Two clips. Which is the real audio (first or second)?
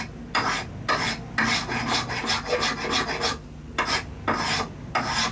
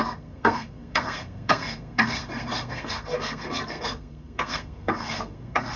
first